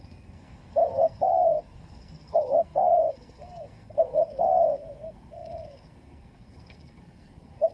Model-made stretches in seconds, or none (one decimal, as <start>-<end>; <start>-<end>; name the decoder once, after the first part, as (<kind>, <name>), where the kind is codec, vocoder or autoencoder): 0.0-7.7 (codec, SNAC)